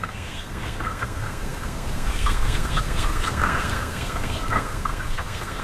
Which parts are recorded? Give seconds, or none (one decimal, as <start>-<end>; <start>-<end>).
none